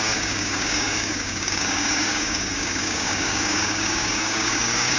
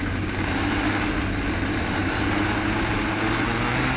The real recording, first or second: second